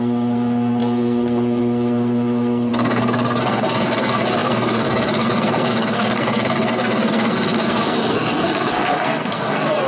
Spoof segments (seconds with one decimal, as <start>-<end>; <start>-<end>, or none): 0.0-9.9